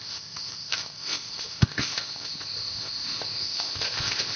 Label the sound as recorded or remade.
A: remade